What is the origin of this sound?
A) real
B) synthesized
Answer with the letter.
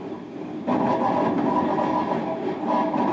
A